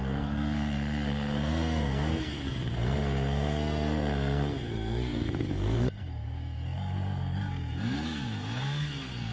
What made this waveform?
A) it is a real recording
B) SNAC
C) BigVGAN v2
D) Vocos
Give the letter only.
B